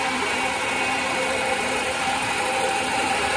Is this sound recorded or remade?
remade